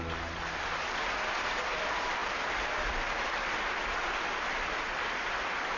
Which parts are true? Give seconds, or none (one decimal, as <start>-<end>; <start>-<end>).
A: 0.0-5.8